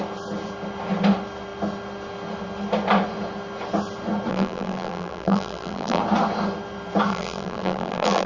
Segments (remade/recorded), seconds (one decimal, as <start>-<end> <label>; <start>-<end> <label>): 0.0-4.3 recorded; 4.3-6.0 remade; 6.0-7.1 recorded; 7.1-8.3 remade